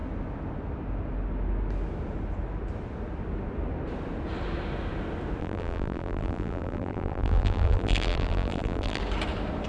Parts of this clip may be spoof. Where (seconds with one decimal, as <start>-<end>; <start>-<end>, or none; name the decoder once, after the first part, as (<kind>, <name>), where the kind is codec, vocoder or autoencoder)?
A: 5.4-9.0 (vocoder, BigVGAN v2)